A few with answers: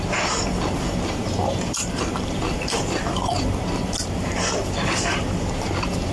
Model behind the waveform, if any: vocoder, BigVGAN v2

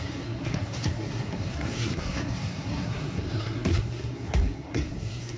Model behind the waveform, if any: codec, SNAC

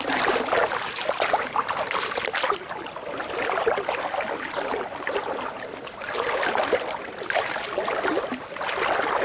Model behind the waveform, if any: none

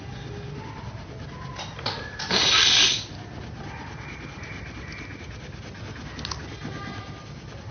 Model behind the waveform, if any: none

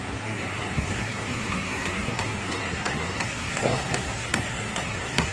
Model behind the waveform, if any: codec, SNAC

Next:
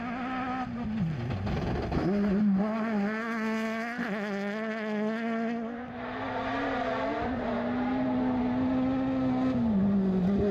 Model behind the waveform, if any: none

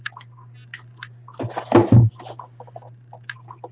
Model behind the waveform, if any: none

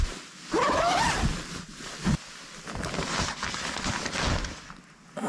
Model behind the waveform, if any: none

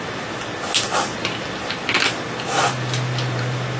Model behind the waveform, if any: none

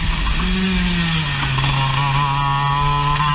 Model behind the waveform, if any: none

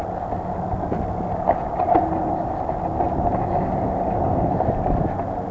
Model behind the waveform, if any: none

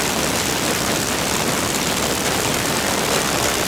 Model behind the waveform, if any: none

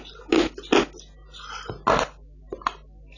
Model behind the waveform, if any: none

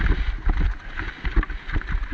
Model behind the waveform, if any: none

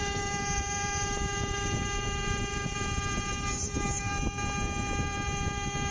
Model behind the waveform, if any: vocoder, BigVGAN v2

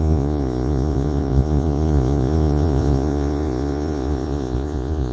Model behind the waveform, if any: vocoder, Vocos